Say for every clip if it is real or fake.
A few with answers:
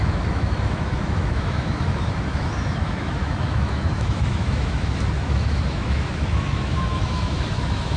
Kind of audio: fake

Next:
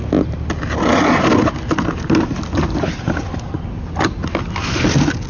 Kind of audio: real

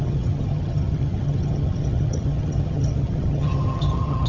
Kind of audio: fake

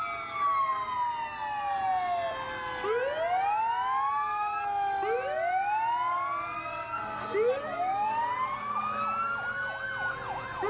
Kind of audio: real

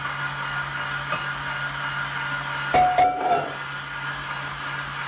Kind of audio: real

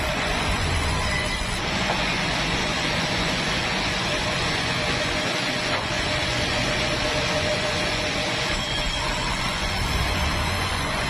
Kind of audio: fake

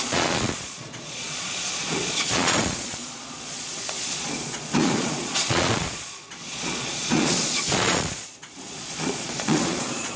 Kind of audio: fake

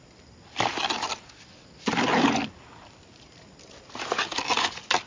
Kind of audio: real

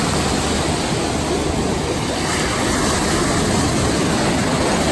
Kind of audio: real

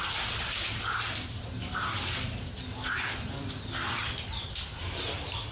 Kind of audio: real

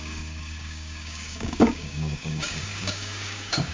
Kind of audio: fake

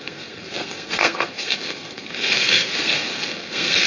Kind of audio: fake